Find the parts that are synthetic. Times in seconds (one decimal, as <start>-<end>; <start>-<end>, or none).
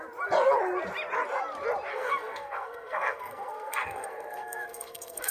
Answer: 1.9-5.3